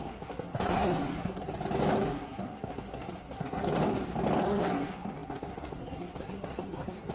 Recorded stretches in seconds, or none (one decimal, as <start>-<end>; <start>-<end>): 1.5-2.0; 3.8-4.4